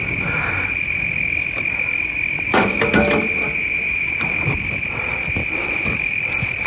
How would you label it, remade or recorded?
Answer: recorded